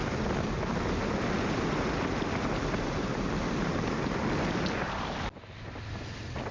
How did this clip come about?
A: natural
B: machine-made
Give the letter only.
A